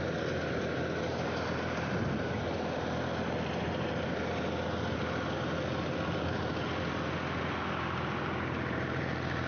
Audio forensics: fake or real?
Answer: real